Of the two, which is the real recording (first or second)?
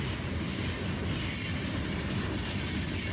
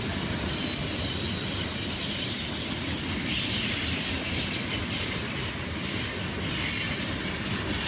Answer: first